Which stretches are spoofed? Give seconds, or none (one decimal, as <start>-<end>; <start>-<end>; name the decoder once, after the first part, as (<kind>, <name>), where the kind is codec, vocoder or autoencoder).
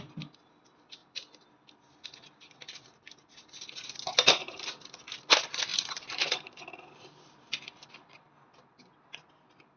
5.7-8.4 (vocoder, BigVGAN v2)